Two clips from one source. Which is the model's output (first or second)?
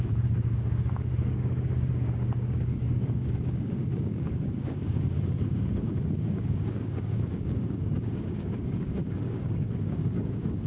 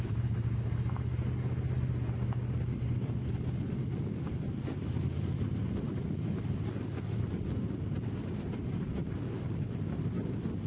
first